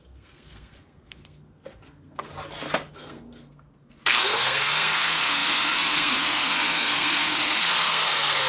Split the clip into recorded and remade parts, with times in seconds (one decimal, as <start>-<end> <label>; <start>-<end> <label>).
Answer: 0.0-2.3 remade; 2.3-2.9 recorded; 2.9-8.5 remade